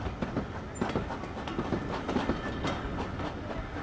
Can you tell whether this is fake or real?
real